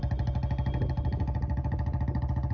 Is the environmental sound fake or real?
real